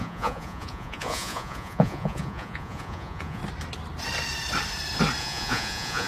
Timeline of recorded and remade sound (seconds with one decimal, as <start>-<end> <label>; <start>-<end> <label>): 0.0-3.4 remade; 3.4-5.2 recorded; 5.2-6.1 remade